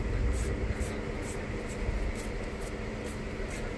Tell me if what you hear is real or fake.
real